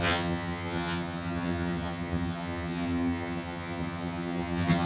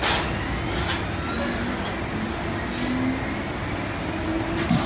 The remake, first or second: first